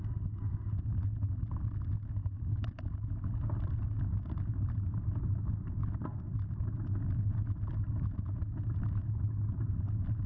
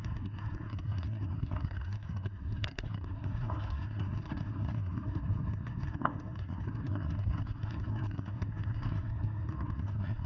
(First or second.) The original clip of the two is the first